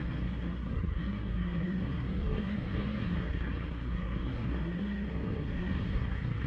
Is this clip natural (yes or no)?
no